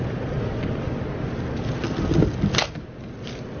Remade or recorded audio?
recorded